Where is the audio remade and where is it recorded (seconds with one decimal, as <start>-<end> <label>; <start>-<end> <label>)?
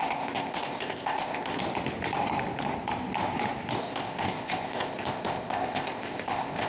0.0-1.6 remade; 1.6-3.8 recorded; 3.8-6.7 remade